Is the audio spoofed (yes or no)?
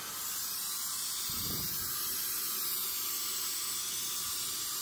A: no